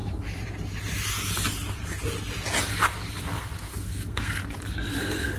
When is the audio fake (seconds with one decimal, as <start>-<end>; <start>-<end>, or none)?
3.2-4.4; 5.0-5.4